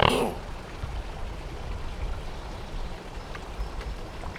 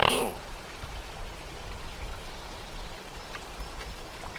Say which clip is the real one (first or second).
second